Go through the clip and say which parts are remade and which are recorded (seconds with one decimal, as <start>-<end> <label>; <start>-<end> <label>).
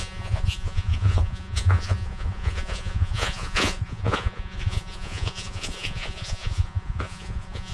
0.0-7.7 remade